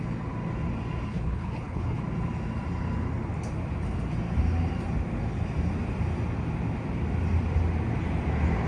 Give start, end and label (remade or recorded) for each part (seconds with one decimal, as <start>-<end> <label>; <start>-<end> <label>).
0.0-1.1 recorded; 1.1-2.0 remade; 2.0-8.7 recorded